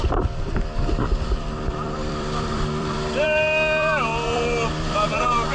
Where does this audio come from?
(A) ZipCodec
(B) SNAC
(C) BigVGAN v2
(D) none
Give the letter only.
C